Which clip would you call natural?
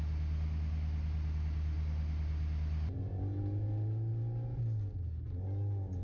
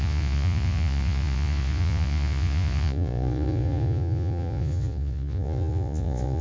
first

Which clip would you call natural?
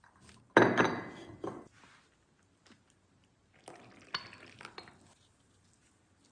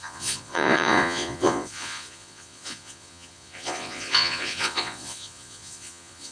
first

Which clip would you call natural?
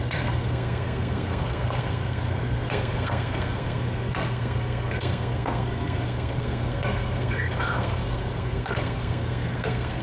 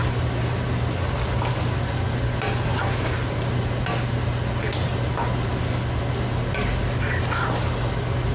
second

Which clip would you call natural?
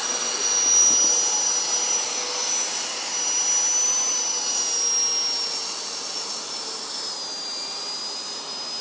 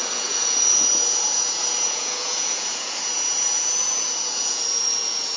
first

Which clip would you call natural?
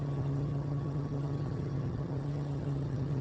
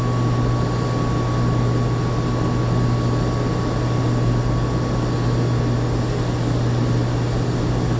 second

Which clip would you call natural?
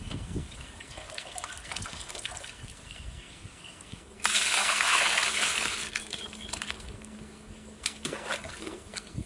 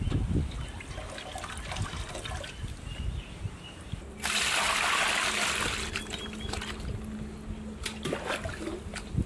second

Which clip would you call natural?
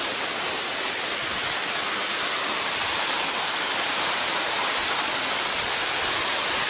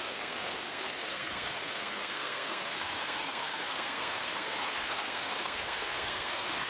first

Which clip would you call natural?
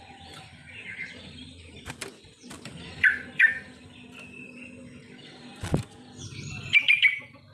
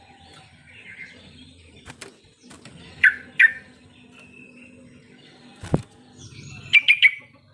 second